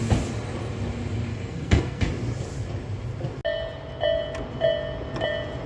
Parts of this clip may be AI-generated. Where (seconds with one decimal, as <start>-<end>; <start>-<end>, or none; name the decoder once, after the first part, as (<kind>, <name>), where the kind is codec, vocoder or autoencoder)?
1.3-2.1 (codec, SNAC)